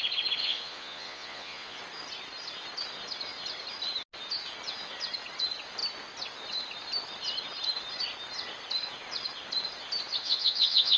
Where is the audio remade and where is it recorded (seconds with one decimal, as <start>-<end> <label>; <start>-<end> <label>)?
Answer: 0.0-0.4 recorded; 0.4-1.8 remade; 1.8-10.2 recorded; 10.2-11.0 remade